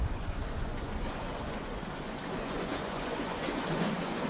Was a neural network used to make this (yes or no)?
yes